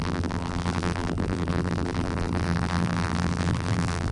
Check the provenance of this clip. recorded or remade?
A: remade